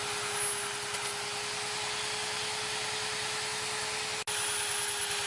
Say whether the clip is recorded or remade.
recorded